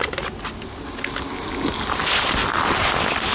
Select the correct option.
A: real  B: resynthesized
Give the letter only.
A